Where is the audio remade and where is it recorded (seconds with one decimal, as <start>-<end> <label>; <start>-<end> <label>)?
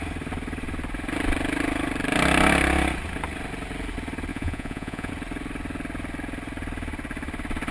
0.0-4.3 recorded; 4.3-5.1 remade; 5.1-7.7 recorded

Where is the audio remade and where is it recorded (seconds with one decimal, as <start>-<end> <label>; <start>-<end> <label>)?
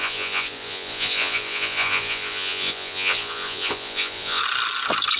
0.0-4.4 remade; 4.4-5.2 recorded